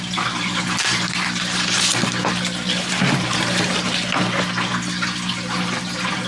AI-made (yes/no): no